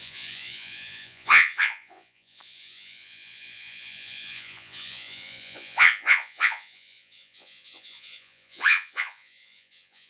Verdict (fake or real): fake